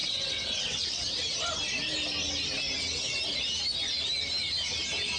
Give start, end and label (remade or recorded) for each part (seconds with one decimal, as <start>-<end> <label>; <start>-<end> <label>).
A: 0.0-1.2 remade; 1.2-5.2 recorded